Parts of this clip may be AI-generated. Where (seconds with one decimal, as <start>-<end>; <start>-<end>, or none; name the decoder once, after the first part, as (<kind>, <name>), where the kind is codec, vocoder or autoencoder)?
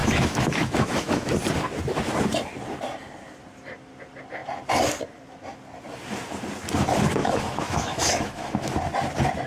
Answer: 0.0-1.3 (autoencoder, DAC-VAE); 7.2-8.8